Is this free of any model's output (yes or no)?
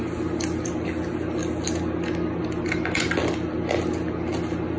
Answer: yes